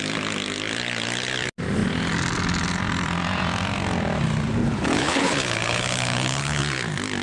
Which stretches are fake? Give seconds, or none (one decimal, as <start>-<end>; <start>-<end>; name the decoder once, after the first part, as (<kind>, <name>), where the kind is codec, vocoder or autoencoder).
4.6-6.6 (codec, HILCodec)